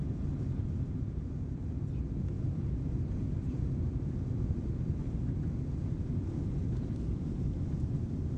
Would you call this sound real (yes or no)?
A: yes